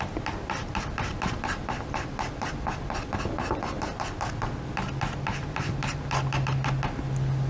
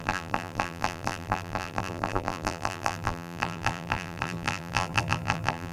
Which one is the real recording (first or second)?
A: first